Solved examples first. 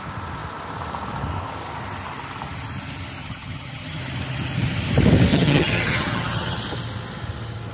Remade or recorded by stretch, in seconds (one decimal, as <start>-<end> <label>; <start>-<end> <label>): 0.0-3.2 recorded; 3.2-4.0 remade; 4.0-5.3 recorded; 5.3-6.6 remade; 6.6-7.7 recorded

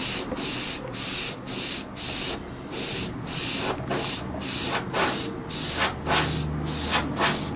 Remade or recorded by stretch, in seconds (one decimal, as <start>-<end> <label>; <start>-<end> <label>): 0.0-7.6 recorded

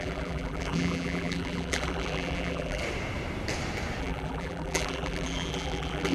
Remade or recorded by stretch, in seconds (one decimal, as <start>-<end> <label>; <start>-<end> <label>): 0.0-2.8 remade; 2.8-4.0 recorded; 4.0-6.1 remade